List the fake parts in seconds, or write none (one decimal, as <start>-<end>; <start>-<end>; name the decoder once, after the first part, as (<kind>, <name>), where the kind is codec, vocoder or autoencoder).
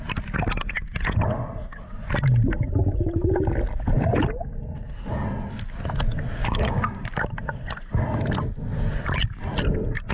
6.4-7.0 (codec, DAC)